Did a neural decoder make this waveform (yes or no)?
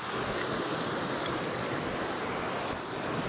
no